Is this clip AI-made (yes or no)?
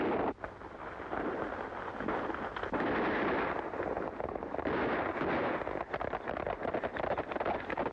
no